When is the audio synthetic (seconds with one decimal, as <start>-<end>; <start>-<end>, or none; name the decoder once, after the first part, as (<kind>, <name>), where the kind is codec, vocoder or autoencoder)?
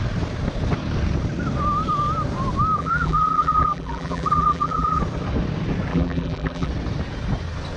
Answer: 2.8-5.0 (vocoder, BigVGAN v2); 5.9-6.7